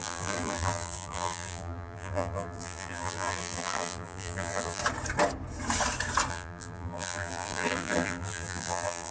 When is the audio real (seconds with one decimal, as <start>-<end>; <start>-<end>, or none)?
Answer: 4.8-6.3